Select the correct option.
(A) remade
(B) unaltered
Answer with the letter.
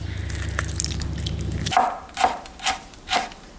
B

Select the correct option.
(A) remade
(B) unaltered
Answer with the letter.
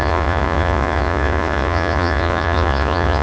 A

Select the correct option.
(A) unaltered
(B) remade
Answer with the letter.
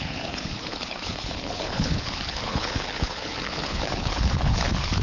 B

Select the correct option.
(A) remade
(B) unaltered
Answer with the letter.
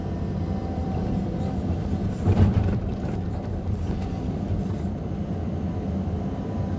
A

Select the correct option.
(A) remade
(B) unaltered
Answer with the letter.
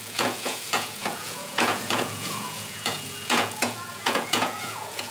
A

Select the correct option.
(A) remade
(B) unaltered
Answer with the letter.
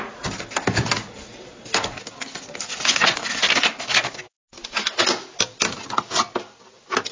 B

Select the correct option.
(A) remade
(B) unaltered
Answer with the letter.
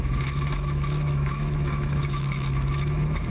A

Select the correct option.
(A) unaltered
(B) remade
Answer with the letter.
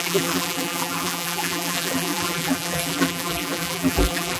B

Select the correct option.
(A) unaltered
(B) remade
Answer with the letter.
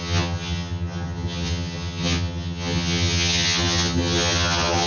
B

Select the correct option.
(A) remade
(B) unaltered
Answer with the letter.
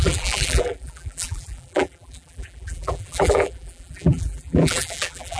A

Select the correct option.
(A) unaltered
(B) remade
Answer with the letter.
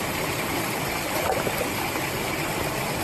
B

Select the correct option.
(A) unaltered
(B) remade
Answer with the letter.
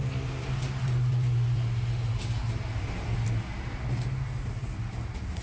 A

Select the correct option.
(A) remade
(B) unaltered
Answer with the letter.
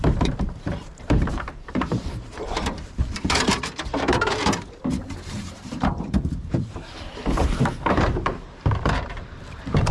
A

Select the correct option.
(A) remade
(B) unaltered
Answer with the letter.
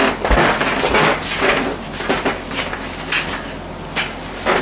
B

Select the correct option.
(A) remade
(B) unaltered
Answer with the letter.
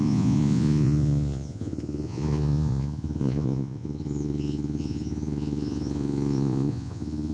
A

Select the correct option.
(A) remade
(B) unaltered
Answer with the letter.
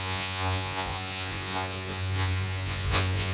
A